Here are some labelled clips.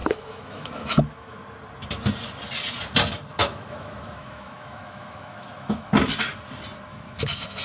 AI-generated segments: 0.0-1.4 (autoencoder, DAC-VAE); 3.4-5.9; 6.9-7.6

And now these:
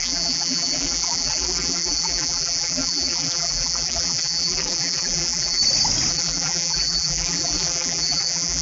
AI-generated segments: 0.0-5.6 (vocoder, BigVGAN v2); 6.1-8.6

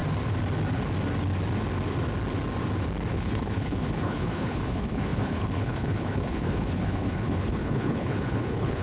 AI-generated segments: 3.1-8.8 (codec, HILCodec)

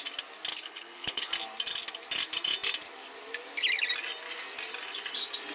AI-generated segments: 0.5-1.3 (codec, HILCodec)

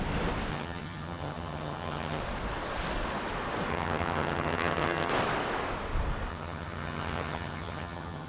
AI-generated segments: 0.5-2.2 (vocoder, HiFi-GAN); 3.7-5.1; 6.3-8.3